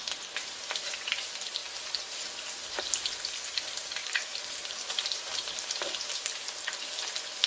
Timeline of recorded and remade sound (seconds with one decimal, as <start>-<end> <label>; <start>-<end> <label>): 0.0-4.0 recorded; 4.0-6.0 remade; 6.0-7.5 recorded